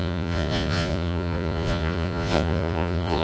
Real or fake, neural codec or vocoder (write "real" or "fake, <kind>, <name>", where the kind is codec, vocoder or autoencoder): fake, vocoder, Vocos